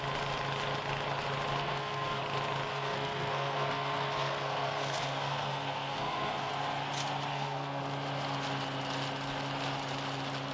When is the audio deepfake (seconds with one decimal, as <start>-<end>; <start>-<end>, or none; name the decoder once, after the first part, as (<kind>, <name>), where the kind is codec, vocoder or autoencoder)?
1.6-2.2 (codec, SNAC); 2.7-6.5; 7.3-7.8